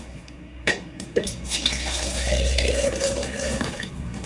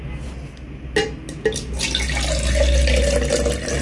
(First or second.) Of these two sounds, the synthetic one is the first